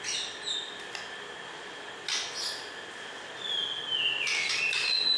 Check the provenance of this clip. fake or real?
real